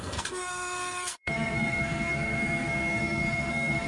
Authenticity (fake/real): fake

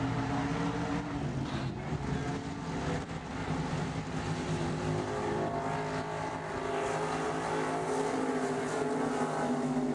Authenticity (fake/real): real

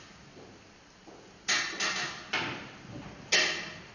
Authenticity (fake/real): real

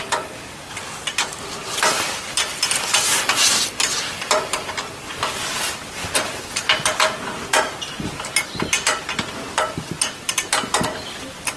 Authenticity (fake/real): fake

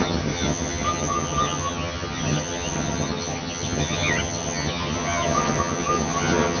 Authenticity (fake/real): fake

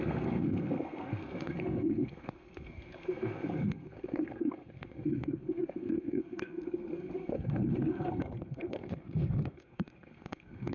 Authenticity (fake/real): fake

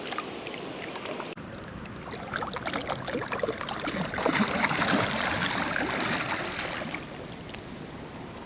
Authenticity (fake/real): real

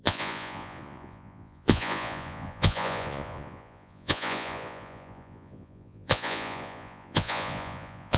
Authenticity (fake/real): fake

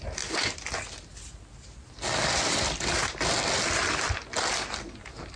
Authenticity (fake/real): real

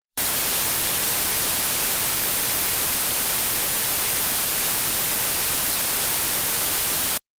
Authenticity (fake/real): fake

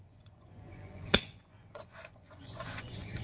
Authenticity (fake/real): fake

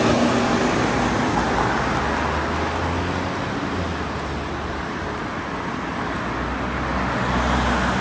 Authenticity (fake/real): real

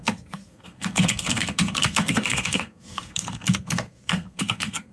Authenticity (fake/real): fake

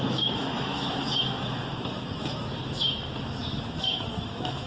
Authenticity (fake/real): fake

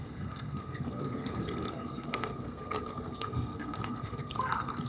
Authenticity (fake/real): fake